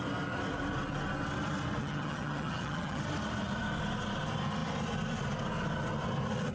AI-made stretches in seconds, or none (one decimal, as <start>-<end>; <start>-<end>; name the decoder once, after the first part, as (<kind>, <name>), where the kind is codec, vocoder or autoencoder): 1.8-3.0 (vocoder, HiFi-GAN)